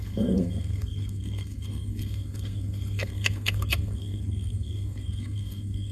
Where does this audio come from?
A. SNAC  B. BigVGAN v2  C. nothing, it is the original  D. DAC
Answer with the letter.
A